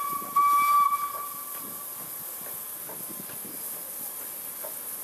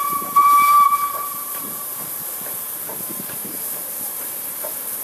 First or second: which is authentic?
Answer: first